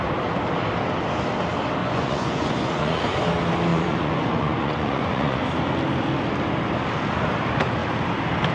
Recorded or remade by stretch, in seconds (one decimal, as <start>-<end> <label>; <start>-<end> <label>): 0.0-1.8 recorded; 1.8-3.2 remade; 3.2-3.7 recorded; 3.7-5.4 remade; 5.4-8.5 recorded